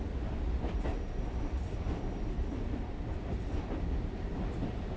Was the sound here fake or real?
fake